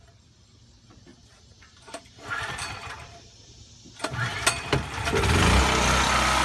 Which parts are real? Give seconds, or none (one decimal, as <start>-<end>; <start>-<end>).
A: 0.0-1.1; 3.7-6.4